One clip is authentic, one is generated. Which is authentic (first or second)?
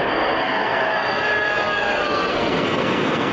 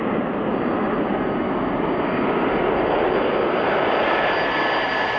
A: second